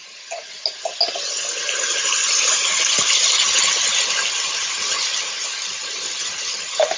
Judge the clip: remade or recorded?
recorded